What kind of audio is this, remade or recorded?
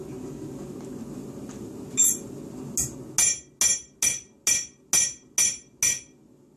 recorded